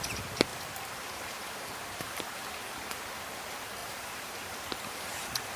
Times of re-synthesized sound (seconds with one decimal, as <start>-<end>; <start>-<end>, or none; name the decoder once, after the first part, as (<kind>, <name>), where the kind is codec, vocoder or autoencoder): 0.0-2.6 (vocoder, BigVGAN v2); 3.3-5.6